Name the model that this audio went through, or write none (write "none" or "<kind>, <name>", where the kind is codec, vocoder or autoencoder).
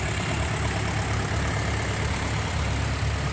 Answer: none